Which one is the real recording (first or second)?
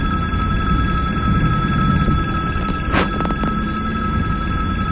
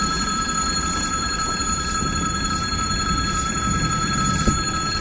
first